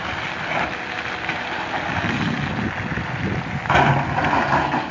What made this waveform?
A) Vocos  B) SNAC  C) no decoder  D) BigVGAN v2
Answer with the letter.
C